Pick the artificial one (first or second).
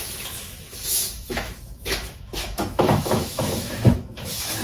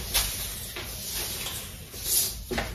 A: first